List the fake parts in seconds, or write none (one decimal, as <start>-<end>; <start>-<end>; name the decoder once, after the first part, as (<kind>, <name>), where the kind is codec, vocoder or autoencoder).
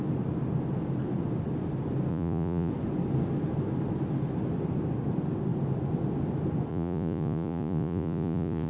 2.1-2.7 (vocoder, Vocos); 6.7-8.7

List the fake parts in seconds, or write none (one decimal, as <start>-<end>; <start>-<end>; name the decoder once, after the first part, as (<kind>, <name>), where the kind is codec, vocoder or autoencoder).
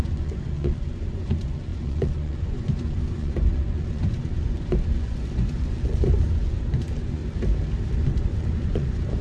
0.0-7.2 (vocoder, Vocos); 7.9-9.2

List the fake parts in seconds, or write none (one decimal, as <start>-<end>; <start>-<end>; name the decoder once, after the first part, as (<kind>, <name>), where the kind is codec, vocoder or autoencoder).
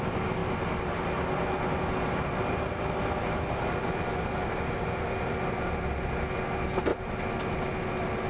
none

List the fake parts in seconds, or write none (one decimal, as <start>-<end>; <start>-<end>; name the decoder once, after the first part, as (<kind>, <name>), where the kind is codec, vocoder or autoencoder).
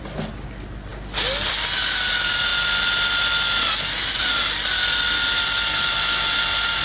none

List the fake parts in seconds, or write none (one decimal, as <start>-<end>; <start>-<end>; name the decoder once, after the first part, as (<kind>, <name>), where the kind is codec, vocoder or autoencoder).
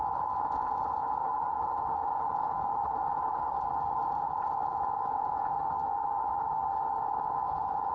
0.0-1.2 (vocoder, Vocos); 2.3-2.7; 4.3-5.5; 7.0-7.9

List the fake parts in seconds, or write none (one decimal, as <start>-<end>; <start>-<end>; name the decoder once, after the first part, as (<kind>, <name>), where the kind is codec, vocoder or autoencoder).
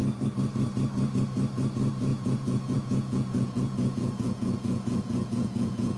2.1-6.0 (vocoder, Vocos)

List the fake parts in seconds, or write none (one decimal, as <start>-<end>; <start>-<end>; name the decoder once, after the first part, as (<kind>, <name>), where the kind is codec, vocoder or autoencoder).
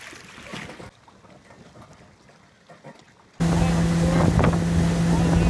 none